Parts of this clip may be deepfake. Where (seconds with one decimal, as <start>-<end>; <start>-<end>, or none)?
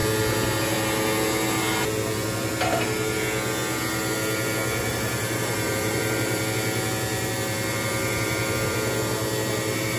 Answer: 4.9-6.4